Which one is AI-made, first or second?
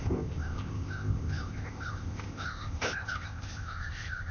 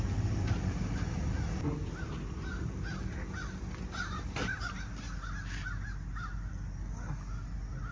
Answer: first